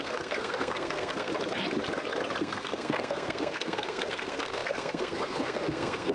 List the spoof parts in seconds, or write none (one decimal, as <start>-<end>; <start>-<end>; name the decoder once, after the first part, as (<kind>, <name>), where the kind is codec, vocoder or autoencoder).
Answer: 0.0-1.3 (codec, SNAC); 2.4-6.1